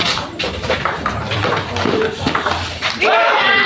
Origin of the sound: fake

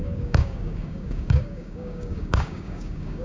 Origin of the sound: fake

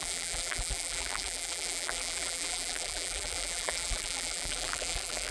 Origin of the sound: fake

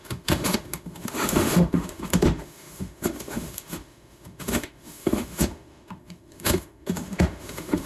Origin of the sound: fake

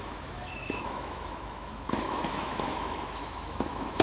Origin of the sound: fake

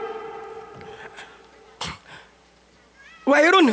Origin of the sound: fake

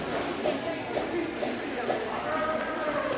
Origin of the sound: real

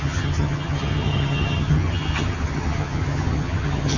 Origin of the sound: fake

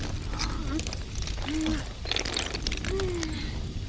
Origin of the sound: real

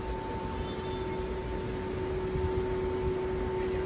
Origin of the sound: real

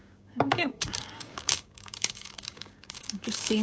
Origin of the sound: fake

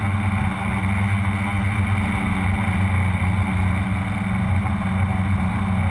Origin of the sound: real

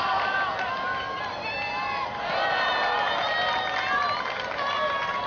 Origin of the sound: real